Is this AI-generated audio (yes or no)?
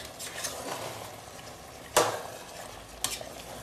no